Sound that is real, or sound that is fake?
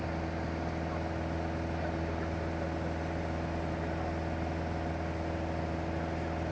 real